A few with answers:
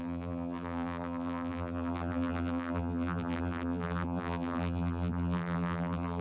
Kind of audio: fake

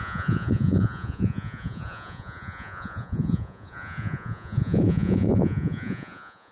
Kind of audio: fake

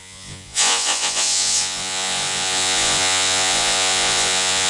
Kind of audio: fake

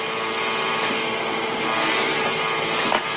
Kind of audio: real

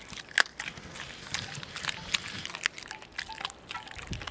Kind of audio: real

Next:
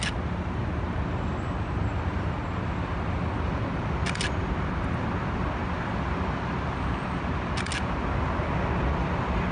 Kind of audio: real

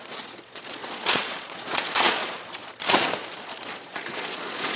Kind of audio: fake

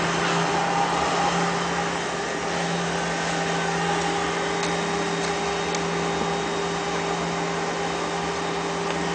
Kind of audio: real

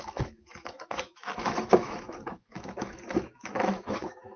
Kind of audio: fake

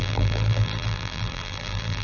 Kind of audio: fake